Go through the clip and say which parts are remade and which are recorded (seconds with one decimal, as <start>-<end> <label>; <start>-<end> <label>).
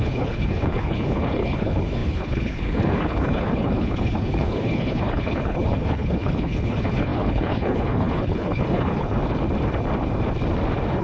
0.0-9.2 remade; 9.2-11.0 recorded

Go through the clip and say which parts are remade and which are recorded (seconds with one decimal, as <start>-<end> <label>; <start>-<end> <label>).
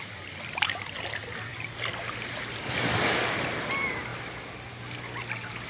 0.0-5.7 recorded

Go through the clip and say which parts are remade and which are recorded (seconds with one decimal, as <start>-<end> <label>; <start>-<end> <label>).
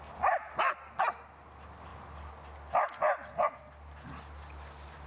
0.0-5.1 recorded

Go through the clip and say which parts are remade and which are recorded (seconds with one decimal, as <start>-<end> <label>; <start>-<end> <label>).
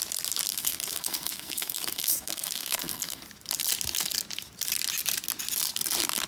0.0-0.5 recorded; 0.5-3.2 remade; 3.2-6.3 recorded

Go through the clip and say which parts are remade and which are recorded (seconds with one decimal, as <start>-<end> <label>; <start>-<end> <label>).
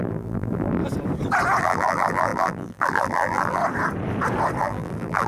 0.0-0.8 remade; 0.8-1.6 recorded; 1.6-3.6 remade; 3.6-4.6 recorded; 4.6-5.3 remade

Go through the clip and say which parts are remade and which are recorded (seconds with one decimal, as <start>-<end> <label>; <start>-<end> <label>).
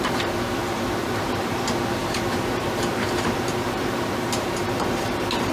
0.0-5.5 remade